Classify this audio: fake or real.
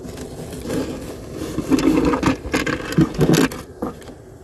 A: real